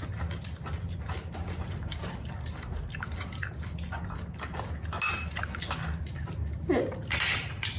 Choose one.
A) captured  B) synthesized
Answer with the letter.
A